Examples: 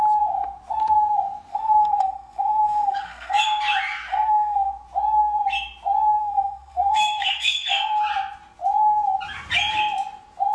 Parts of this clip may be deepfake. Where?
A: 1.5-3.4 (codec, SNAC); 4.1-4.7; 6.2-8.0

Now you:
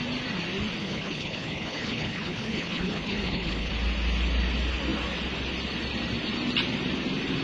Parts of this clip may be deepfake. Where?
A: 0.8-3.7 (codec, HILCodec)